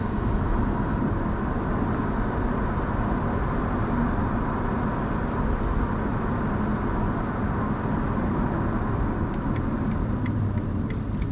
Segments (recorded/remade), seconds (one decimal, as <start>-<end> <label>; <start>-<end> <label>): 0.0-11.3 recorded